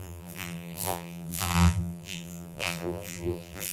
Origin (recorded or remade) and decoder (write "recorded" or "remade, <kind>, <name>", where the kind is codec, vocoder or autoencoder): remade, vocoder, BigVGAN v2